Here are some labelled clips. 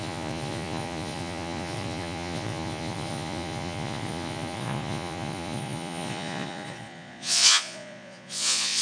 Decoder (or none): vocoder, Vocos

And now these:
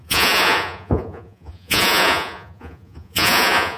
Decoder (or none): vocoder, Vocos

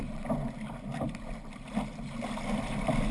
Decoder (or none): none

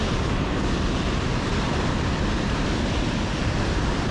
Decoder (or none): none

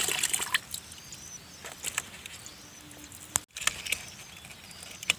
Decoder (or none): none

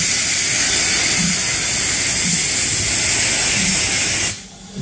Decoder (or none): none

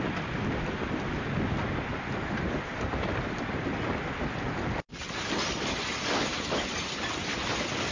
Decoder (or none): none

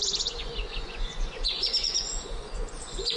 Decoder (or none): vocoder, Vocos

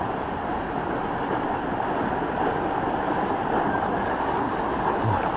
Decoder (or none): none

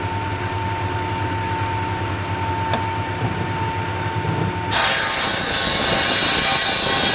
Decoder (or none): none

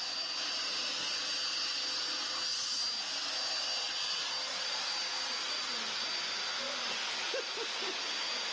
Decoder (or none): none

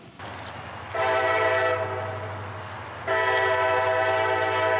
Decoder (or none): none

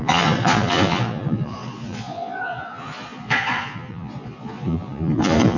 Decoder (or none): vocoder, Vocos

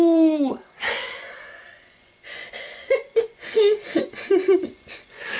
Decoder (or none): vocoder, Vocos